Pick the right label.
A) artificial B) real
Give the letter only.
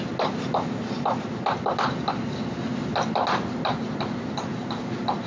B